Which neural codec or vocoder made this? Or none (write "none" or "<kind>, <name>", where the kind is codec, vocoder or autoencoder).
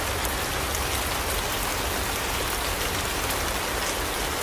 none